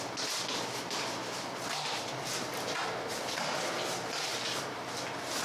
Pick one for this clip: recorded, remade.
recorded